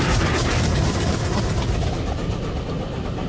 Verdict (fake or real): real